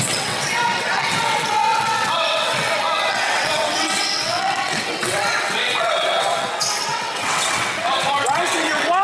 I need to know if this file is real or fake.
fake